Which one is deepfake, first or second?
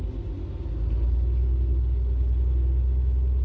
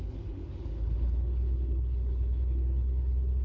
second